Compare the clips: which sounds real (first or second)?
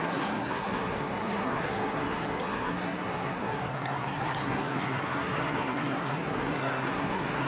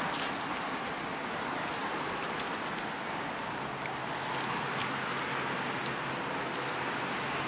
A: second